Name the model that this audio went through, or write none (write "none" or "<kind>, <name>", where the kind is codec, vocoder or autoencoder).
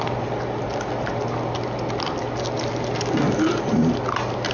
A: none